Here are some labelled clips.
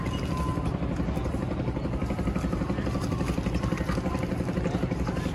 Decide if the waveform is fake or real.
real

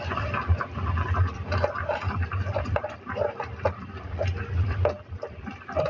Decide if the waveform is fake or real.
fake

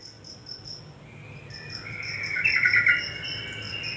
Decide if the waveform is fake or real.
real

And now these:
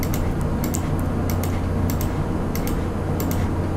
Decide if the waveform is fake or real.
real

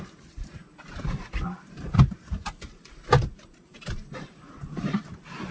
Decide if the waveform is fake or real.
fake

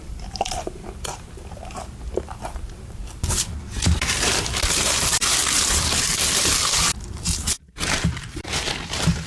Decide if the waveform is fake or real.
fake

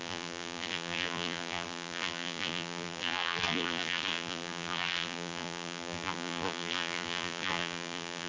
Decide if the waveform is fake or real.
fake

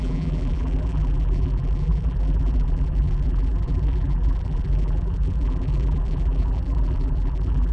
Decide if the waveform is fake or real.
fake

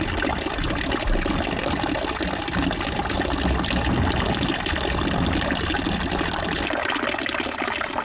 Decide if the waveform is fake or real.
real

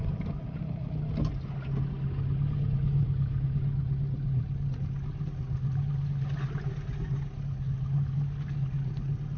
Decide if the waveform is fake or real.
real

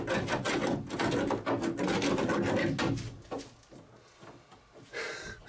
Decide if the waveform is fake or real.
real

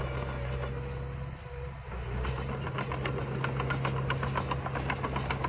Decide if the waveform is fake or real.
real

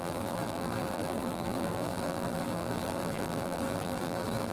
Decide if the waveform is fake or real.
fake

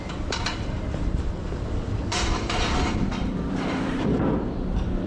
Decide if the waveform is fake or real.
fake